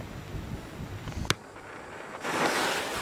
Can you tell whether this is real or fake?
real